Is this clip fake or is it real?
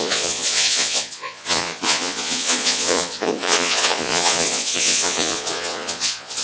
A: fake